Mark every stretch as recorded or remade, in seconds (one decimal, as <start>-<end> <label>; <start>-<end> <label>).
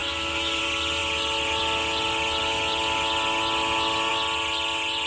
0.0-0.6 remade; 0.6-5.1 recorded